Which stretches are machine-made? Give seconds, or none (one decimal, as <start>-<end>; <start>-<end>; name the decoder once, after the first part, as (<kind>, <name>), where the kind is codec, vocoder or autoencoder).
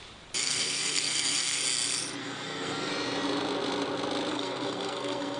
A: 0.4-1.6 (codec, SNAC); 2.2-2.9; 4.3-5.4